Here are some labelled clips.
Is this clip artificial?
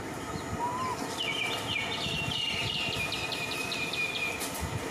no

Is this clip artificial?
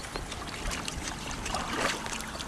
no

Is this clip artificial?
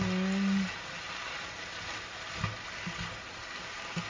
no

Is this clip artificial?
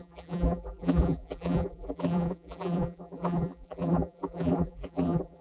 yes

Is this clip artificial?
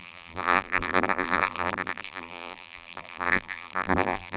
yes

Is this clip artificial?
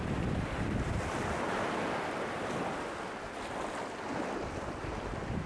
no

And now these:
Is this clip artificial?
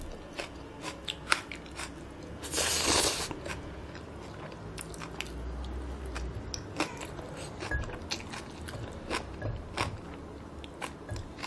no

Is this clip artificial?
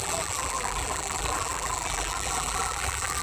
yes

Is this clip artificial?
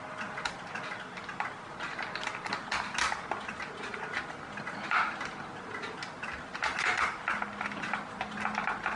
no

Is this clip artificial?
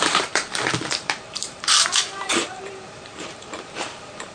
yes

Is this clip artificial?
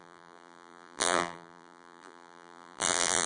yes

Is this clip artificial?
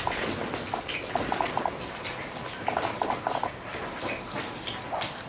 no